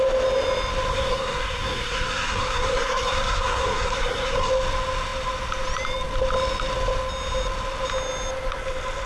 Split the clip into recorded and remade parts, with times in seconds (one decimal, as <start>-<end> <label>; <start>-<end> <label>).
0.0-0.9 recorded; 0.9-4.5 remade; 4.5-9.1 recorded